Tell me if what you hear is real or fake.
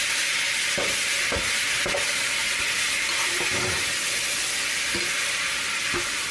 real